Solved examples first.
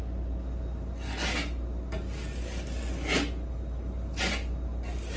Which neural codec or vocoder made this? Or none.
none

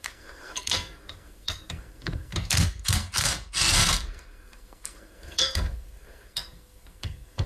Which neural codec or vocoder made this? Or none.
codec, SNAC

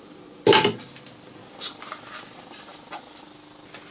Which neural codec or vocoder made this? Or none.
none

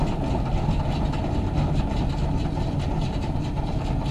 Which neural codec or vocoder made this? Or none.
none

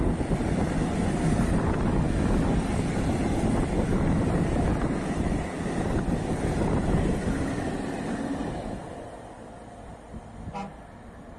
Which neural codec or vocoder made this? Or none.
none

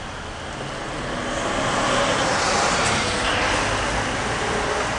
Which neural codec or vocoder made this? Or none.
none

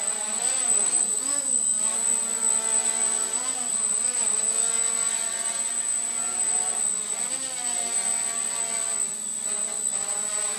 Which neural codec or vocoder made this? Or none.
none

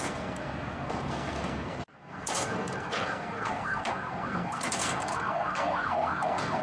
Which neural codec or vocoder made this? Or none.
codec, SNAC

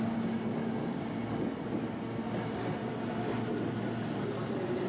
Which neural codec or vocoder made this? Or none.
none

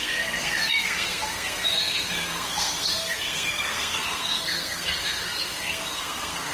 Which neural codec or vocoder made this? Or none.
codec, SNAC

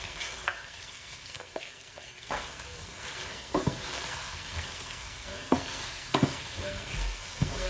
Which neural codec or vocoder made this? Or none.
codec, SNAC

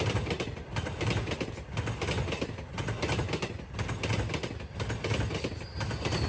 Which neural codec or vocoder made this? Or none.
none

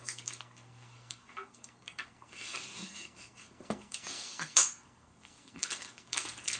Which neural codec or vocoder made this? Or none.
codec, SNAC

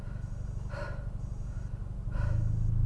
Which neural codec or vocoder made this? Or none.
none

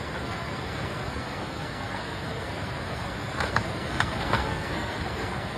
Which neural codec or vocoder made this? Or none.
codec, SNAC